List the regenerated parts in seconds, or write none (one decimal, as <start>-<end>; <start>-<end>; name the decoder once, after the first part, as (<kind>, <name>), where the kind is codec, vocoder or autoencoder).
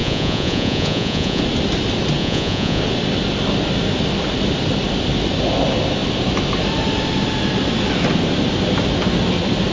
0.0-1.4 (vocoder, Vocos); 2.2-2.8